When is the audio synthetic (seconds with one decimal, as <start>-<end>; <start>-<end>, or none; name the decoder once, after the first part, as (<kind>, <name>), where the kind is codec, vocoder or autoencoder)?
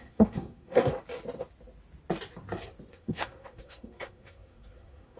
0.0-0.9 (codec, SNAC); 2.9-5.2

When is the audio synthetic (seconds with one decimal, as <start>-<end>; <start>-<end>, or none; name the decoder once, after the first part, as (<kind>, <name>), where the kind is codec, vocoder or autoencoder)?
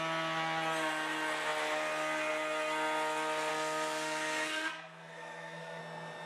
3.5-5.8 (codec, SNAC)